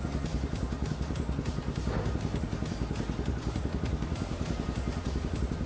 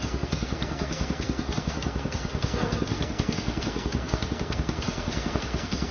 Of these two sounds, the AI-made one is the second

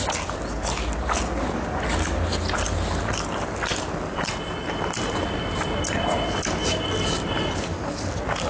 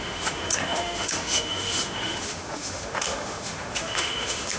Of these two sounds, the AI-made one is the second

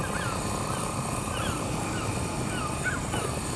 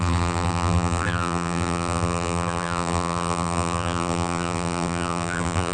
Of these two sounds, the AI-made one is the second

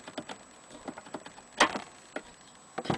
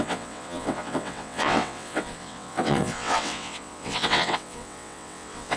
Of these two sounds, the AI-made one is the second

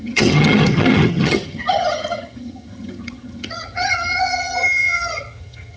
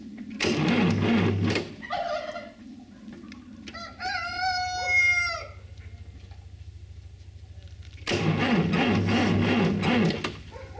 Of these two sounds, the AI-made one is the first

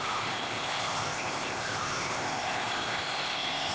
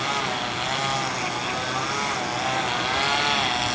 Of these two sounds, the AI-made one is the first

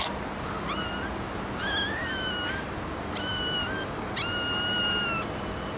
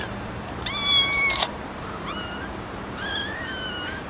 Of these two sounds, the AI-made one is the second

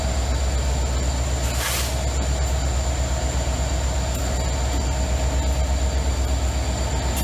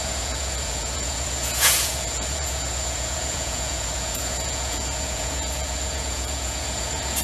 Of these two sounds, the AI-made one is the second